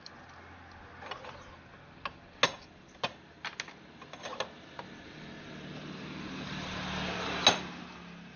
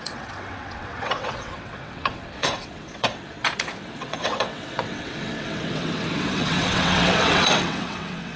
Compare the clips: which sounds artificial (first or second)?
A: second